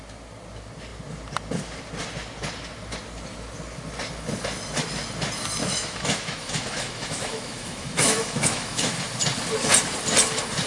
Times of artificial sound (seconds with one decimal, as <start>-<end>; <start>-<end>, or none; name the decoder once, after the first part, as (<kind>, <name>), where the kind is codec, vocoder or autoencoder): 5.6-9.0 (autoencoder, DAC-VAE)